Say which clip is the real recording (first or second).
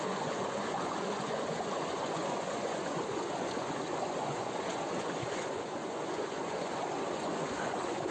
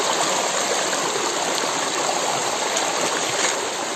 second